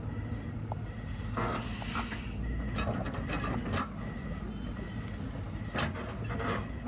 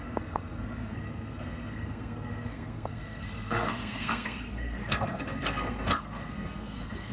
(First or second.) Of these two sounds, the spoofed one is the second